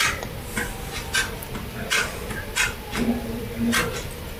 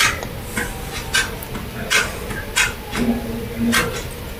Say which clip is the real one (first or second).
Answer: second